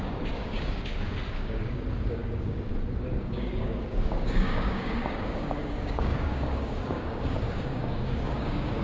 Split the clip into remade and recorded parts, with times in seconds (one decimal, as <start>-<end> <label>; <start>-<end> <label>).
0.0-2.7 remade; 2.7-3.2 recorded; 3.2-8.8 remade